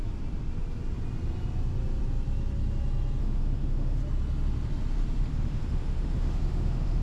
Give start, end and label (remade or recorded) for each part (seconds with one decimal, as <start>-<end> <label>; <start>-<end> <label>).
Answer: 0.0-3.2 recorded; 3.2-4.0 remade; 4.0-5.3 recorded; 5.3-7.0 remade